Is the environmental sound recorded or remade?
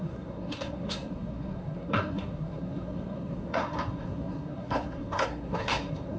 remade